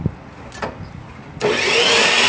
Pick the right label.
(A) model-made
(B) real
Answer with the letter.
B